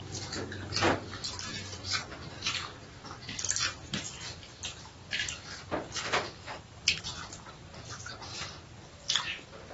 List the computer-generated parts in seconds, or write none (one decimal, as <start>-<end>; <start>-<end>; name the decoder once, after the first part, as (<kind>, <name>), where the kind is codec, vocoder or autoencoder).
5.0-7.0 (vocoder, BigVGAN v2)